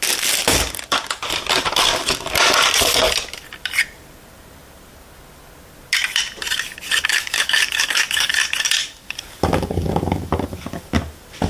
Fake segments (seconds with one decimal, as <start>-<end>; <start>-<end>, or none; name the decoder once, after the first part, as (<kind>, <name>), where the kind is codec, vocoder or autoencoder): 7.1-8.3 (codec, DAC); 8.8-10.8